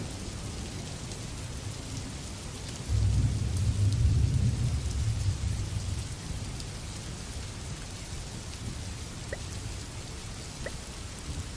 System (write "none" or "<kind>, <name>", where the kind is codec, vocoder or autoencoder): none